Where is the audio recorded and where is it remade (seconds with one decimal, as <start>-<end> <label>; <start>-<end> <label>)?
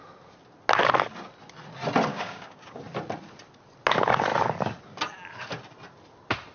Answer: 0.0-2.1 recorded; 2.1-2.8 remade; 2.8-6.5 recorded